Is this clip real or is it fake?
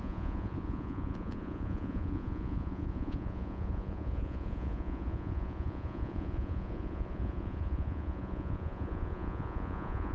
fake